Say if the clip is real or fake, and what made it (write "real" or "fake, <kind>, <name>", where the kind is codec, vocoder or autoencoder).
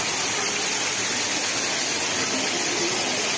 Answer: real